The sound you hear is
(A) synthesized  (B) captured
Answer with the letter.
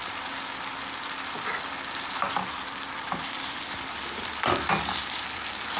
B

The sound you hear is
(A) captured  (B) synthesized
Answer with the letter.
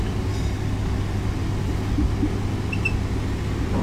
A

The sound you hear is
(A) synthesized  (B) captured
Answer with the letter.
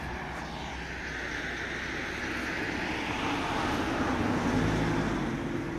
B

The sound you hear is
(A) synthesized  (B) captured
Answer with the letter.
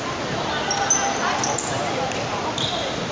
B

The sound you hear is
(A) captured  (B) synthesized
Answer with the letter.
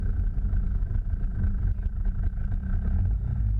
A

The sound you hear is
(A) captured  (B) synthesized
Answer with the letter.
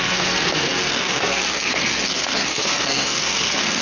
B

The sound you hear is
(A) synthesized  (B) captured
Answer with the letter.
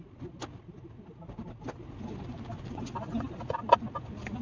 B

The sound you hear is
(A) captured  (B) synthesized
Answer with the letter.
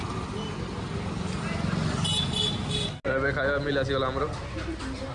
A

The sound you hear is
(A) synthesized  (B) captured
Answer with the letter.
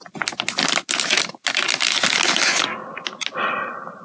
B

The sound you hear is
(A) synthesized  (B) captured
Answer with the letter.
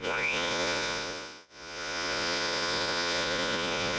A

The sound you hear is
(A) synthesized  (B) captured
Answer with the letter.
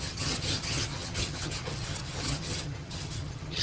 A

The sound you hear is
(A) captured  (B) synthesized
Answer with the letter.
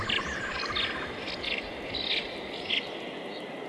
A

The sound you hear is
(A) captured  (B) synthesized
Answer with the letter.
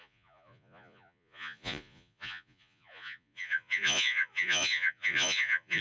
B